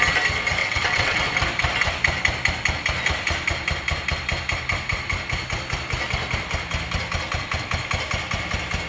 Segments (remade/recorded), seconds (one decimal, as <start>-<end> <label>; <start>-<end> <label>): 0.0-0.6 recorded; 0.6-1.2 remade; 1.2-8.9 recorded